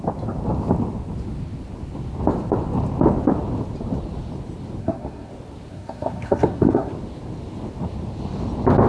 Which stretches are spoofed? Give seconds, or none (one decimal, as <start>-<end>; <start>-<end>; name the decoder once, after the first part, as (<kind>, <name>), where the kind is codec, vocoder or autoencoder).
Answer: 4.8-5.3 (codec, SNAC); 5.7-6.9